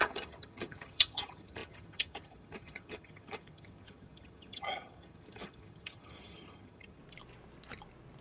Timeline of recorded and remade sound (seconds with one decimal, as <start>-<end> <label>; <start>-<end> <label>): 0.0-7.0 remade; 7.0-8.2 recorded